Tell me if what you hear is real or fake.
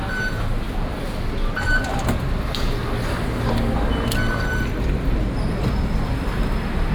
real